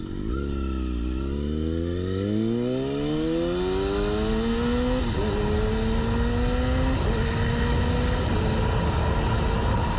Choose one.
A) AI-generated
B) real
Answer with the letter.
B